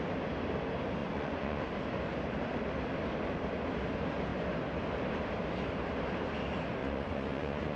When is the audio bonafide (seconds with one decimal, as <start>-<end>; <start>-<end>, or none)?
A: 0.0-1.0; 1.6-6.8